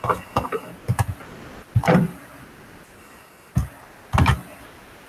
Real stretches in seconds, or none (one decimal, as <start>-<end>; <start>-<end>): 0.7-3.0; 3.5-5.1